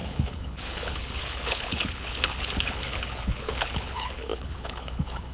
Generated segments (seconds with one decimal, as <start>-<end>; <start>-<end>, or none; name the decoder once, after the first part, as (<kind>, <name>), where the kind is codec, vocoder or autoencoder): 0.0-5.3 (codec, HILCodec)